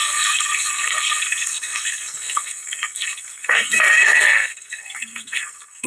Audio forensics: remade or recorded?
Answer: remade